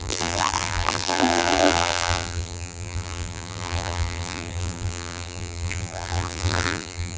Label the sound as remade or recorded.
remade